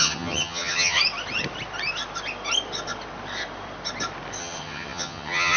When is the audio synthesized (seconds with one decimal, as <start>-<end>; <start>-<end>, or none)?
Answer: 0.0-1.0; 4.4-5.6